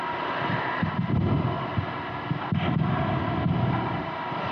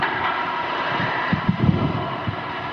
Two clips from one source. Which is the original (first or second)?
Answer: first